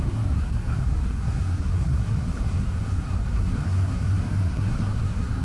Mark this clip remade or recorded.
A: remade